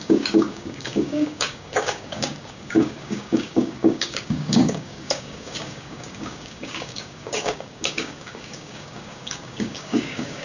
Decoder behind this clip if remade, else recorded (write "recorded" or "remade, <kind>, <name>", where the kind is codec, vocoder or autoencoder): remade, codec, DAC